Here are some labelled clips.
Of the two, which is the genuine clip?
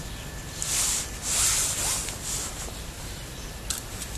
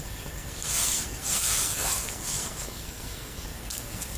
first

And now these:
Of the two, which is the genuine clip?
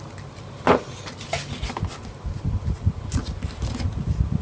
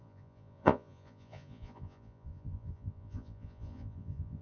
first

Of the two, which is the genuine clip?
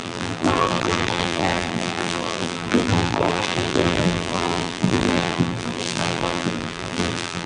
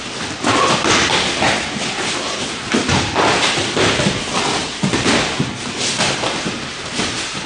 second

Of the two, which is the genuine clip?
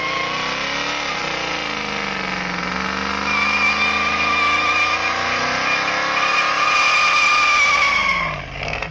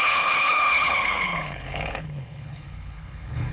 first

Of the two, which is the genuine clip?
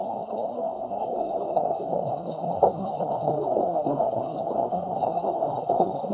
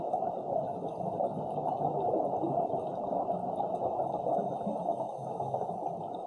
second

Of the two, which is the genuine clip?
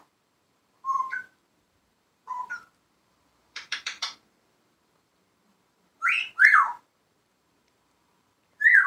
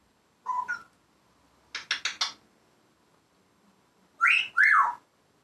second